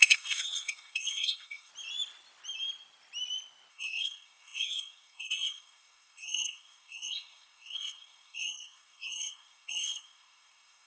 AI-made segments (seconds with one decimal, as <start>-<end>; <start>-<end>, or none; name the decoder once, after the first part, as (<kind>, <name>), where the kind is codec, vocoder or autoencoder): 0.0-1.7 (codec, SNAC); 3.7-10.9